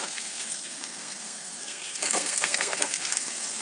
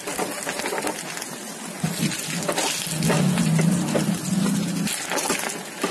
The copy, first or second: first